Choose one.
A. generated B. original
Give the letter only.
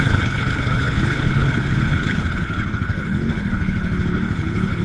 A